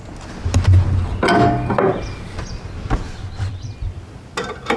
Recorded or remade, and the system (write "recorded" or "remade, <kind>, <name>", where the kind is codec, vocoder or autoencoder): recorded